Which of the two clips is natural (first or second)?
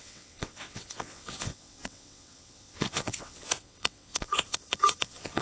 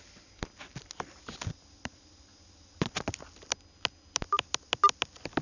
second